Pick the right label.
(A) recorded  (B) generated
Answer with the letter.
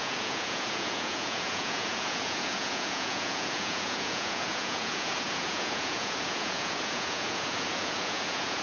B